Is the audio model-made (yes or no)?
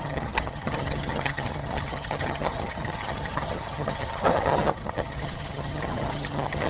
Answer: yes